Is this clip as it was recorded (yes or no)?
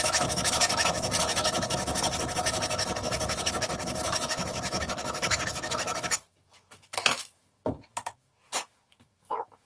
no